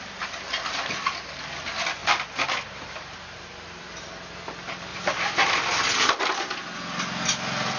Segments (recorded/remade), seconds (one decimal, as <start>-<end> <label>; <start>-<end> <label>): 0.0-2.0 recorded; 2.0-4.0 remade; 4.0-4.9 recorded; 4.9-5.6 remade; 5.6-7.8 recorded